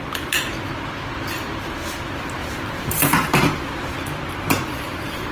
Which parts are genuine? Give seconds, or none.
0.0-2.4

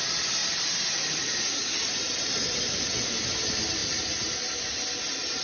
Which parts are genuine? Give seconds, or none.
0.0-0.4; 2.6-5.4

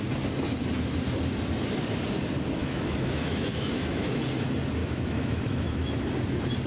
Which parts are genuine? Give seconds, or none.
0.0-2.6; 4.2-4.8; 6.0-6.7

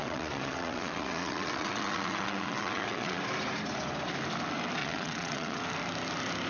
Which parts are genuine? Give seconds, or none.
3.2-4.8; 5.6-6.5

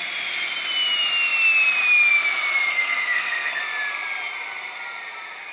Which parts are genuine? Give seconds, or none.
0.0-2.7; 3.6-5.5

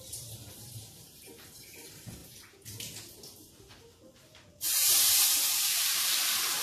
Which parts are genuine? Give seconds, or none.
2.2-5.3